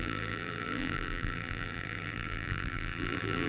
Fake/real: fake